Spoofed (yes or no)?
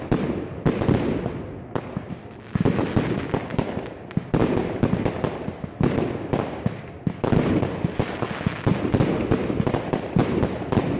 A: no